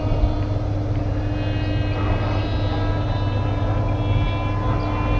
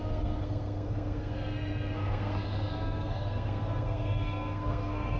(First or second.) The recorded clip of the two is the first